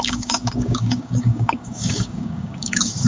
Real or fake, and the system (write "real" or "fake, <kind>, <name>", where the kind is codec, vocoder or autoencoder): fake, codec, DAC